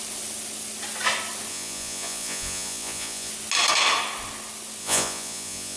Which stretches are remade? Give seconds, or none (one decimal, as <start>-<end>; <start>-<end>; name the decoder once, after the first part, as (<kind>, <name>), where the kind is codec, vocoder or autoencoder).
1.5-3.3 (vocoder, Vocos); 4.8-5.8